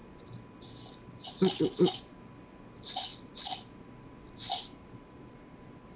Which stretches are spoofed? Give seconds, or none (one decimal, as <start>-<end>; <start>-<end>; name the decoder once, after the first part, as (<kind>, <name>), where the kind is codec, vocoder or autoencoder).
3.1-6.0 (vocoder, BigVGAN v2)